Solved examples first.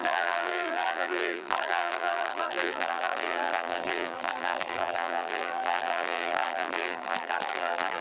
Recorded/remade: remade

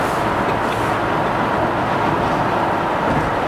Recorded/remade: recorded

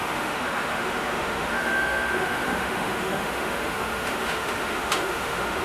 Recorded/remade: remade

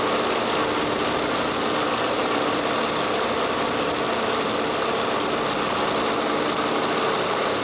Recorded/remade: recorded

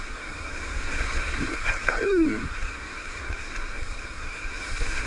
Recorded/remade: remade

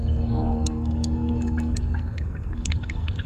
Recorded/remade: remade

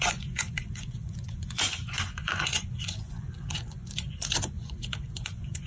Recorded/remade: remade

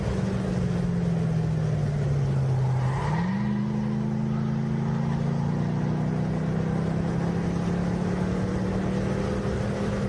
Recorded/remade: recorded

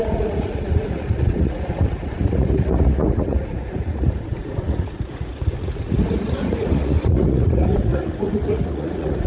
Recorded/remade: remade